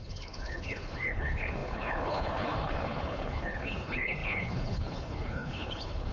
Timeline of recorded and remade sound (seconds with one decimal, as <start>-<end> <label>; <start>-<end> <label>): 0.0-6.1 remade